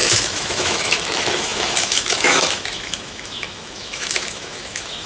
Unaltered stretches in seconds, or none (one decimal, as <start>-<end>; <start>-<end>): none